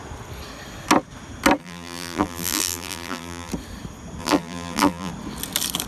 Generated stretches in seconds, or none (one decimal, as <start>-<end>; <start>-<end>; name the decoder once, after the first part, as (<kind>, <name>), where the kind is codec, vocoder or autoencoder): 1.6-3.5 (vocoder, BigVGAN v2); 4.2-5.1